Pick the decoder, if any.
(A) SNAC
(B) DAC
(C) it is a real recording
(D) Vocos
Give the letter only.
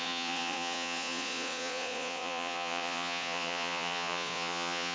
D